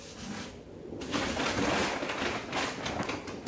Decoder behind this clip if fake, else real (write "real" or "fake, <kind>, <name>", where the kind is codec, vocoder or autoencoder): real